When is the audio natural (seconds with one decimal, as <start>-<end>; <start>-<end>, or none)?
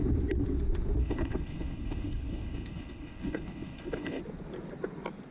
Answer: 0.0-1.0; 4.2-5.3